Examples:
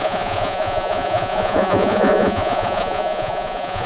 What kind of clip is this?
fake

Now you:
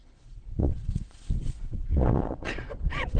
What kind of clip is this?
fake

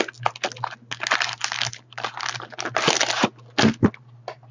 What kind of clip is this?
real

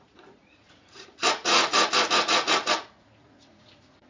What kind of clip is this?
fake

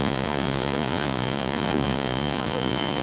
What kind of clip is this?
fake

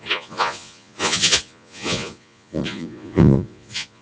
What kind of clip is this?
fake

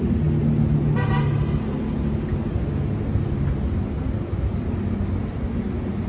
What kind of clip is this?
real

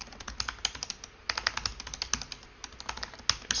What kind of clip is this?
real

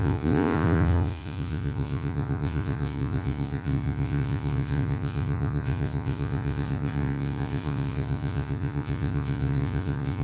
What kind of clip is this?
fake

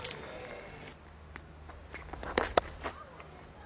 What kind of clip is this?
real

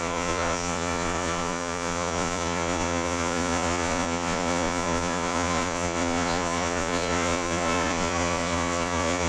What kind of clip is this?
fake